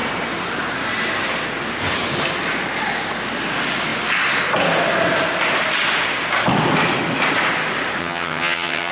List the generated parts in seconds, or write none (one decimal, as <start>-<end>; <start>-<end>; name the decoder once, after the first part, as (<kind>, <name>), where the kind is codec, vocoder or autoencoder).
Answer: 8.0-8.9 (vocoder, HiFi-GAN)